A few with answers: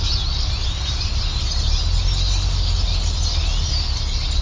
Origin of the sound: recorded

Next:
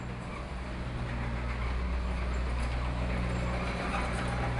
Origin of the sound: recorded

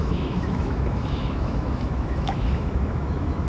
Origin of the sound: remade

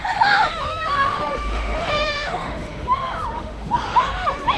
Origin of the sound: remade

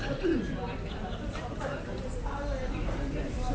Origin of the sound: remade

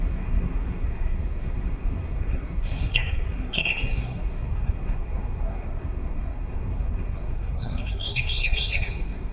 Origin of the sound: remade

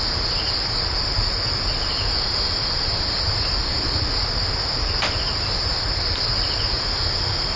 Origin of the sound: recorded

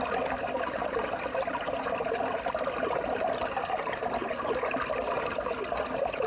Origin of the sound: recorded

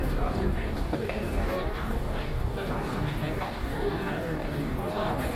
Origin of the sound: remade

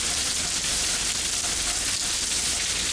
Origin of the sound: recorded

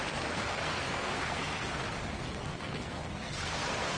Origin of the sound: remade